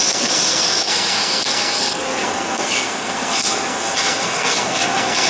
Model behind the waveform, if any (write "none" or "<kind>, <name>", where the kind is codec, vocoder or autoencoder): codec, SNAC